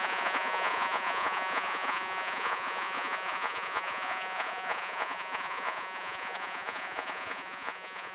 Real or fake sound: fake